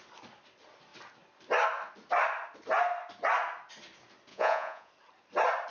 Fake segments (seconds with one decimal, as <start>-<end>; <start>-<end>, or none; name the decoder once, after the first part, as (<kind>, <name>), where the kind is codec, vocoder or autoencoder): 4.3-4.9 (vocoder, Vocos)